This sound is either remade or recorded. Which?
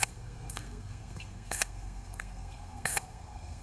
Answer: remade